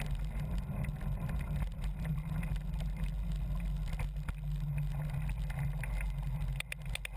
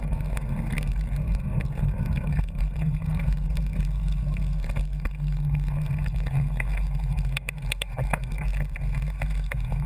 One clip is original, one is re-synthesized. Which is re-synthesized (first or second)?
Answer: second